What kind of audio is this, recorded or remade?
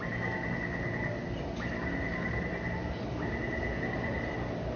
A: recorded